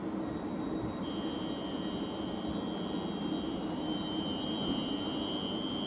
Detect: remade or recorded recorded